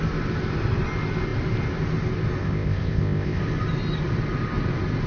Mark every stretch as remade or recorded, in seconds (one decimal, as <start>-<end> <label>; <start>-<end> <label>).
0.0-2.4 recorded; 2.4-3.4 remade; 3.4-5.1 recorded